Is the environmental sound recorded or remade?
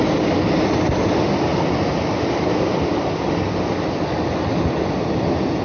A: recorded